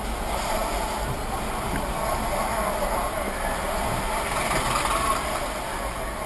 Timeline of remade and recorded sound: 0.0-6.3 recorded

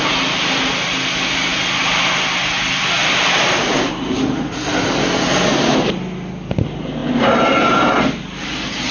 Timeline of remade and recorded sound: 0.0-3.0 recorded; 3.0-4.6 remade; 4.6-8.9 recorded

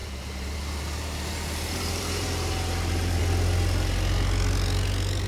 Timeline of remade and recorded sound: 0.0-3.2 remade; 3.2-5.3 recorded

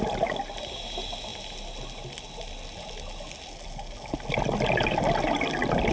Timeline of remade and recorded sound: 0.0-5.9 recorded